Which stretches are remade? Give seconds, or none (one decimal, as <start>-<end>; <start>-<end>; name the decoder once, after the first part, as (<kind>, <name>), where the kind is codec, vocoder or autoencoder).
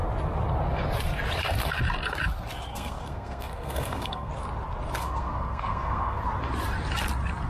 2.7-4.3 (codec, SNAC); 5.0-6.2